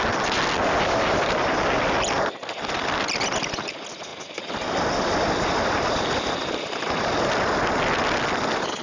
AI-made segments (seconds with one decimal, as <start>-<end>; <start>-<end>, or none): none